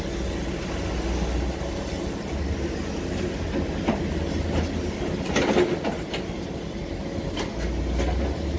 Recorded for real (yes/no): yes